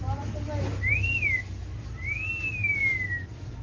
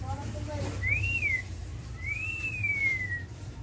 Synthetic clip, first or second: second